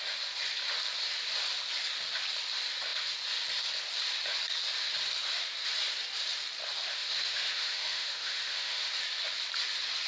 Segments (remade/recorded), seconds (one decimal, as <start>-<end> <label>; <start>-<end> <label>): 0.0-6.9 recorded; 6.9-8.9 remade; 8.9-10.1 recorded